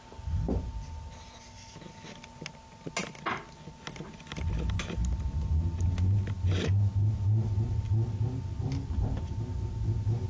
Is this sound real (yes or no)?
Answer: yes